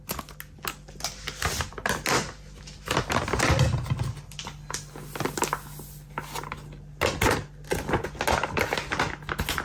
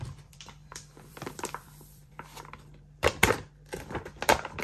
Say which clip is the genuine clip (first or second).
first